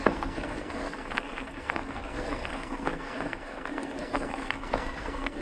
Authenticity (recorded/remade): remade